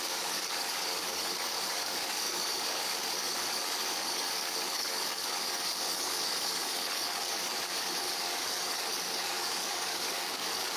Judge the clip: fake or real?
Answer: fake